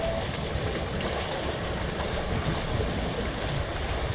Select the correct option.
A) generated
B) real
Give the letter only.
B